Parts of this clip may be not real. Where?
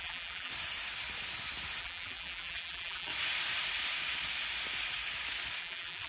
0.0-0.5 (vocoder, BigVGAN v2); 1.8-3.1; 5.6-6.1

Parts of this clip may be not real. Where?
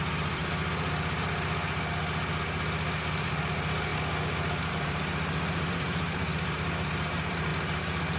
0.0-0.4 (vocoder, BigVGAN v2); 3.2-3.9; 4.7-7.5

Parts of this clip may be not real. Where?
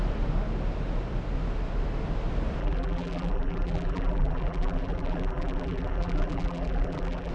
2.6-7.3 (vocoder, BigVGAN v2)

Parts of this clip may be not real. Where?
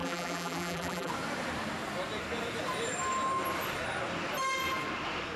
0.0-1.1 (vocoder, BigVGAN v2)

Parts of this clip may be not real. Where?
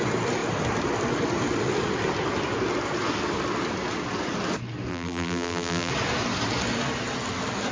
4.9-5.9 (vocoder, BigVGAN v2)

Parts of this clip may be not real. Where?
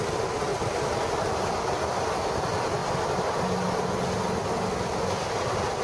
0.5-1.1 (vocoder, BigVGAN v2)